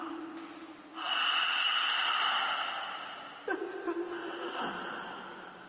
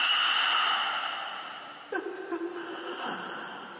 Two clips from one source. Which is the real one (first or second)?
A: first